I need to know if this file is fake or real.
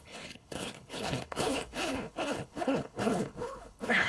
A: fake